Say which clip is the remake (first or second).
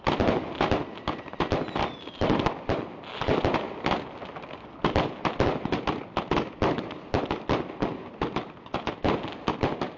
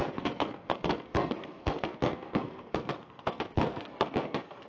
second